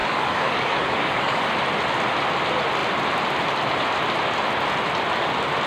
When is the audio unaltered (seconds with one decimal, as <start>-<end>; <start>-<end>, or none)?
1.5-5.7